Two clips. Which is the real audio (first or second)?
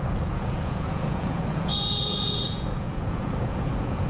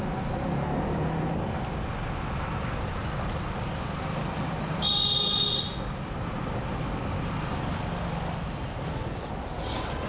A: second